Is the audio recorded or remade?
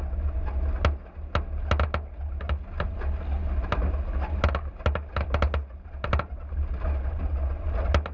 recorded